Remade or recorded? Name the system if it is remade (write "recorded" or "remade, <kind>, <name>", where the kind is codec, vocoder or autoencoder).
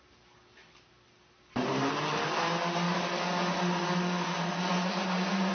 recorded